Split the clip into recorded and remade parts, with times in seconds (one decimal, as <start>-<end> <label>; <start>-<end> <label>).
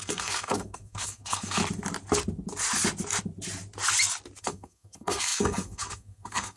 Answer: 0.0-1.6 remade; 1.6-4.4 recorded; 4.4-6.6 remade